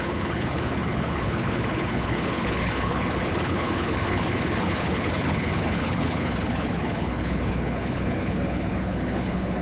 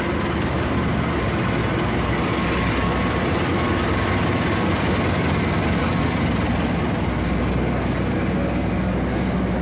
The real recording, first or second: second